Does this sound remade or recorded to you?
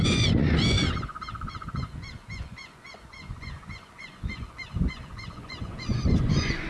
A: remade